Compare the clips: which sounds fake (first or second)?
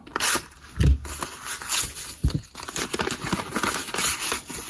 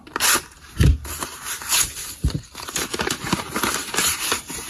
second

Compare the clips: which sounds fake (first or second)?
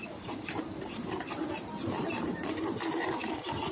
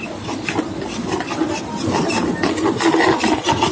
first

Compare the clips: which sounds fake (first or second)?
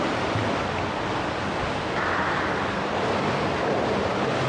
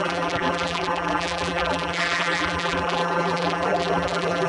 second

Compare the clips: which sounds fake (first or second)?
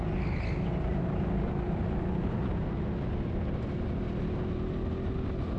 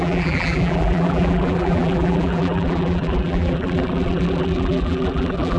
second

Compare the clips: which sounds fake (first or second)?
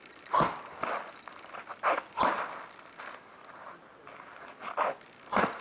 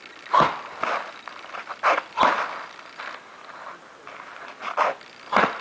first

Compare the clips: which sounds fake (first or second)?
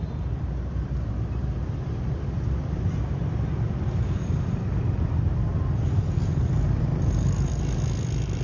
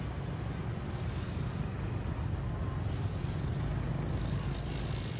first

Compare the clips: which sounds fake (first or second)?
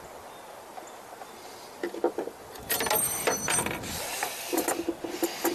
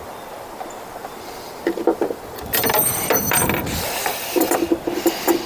second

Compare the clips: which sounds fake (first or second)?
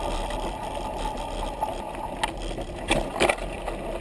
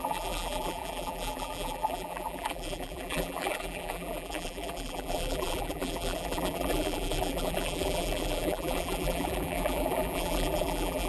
second